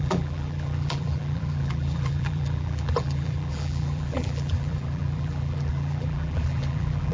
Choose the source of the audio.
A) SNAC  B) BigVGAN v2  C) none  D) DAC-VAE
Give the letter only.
B